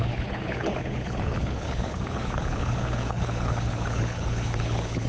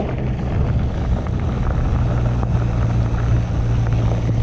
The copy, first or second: first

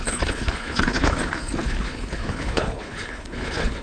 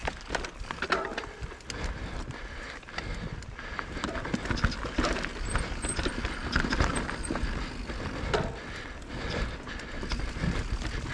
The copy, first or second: first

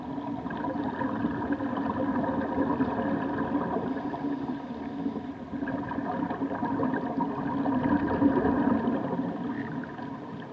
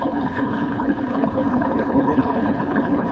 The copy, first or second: second